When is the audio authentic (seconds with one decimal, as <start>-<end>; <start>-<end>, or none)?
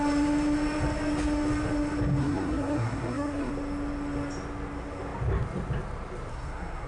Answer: 0.0-2.2; 3.5-6.3